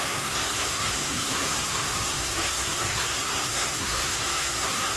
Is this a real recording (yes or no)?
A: no